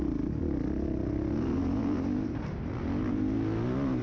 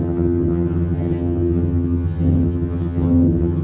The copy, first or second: second